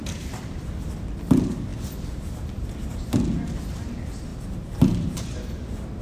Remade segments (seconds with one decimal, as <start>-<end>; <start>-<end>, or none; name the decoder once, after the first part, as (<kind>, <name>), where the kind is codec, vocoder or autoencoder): 0.0-0.5 (vocoder, BigVGAN v2); 4.3-6.0